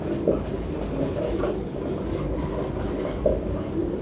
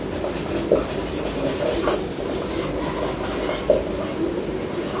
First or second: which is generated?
first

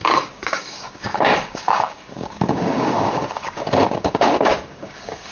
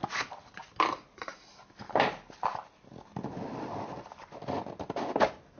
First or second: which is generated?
first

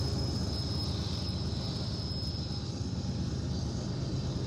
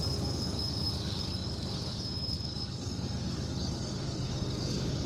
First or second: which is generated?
second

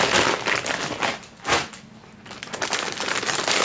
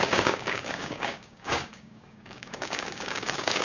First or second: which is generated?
second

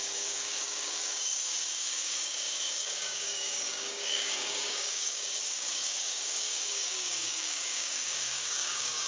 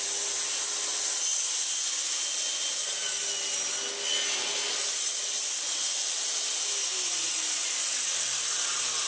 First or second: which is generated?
first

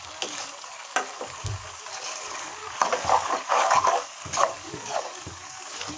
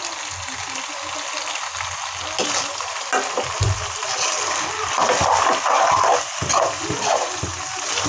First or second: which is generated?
first